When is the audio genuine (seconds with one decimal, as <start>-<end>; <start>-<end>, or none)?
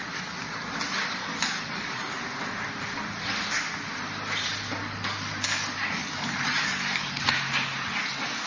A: 0.0-1.2; 2.2-4.8; 7.2-8.5